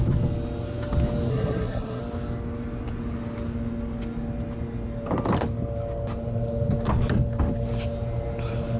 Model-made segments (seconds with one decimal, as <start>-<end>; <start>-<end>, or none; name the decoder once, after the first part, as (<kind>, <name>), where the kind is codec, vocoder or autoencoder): 1.3-2.0 (codec, SNAC)